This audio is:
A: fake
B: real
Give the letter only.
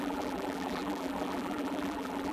A